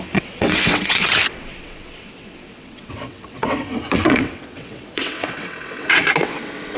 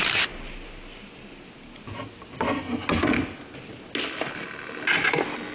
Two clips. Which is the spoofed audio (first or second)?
first